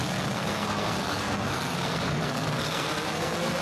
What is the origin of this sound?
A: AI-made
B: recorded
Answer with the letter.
A